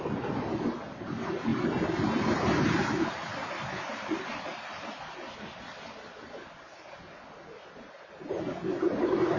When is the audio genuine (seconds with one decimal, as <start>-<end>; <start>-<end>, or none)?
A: 0.0-1.5; 2.2-3.3; 5.0-9.4

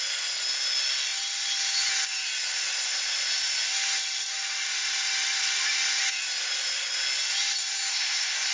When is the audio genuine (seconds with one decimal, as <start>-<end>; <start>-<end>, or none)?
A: 0.0-7.9

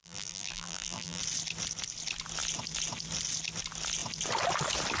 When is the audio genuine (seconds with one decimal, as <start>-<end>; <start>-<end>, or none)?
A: 1.2-5.0

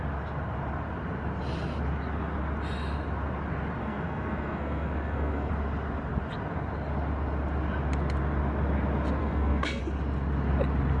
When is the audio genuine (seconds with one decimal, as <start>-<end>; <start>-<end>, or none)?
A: 0.0-3.8; 5.5-9.2; 9.8-11.0

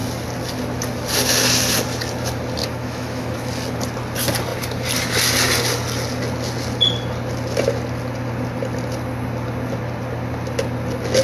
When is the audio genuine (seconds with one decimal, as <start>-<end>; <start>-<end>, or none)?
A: 0.0-2.6; 3.5-11.2

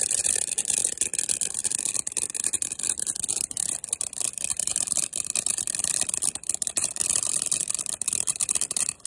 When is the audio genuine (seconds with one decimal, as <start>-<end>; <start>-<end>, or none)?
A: 0.8-1.5